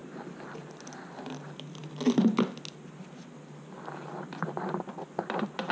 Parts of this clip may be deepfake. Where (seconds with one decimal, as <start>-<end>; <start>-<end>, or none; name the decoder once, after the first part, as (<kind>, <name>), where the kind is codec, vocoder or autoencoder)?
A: none